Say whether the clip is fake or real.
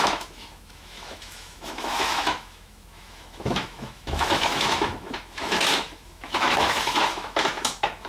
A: fake